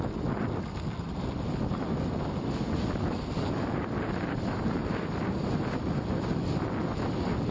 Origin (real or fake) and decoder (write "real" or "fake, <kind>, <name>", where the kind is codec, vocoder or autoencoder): real